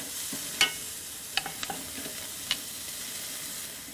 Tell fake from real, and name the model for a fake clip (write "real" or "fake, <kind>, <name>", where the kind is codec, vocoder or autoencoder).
real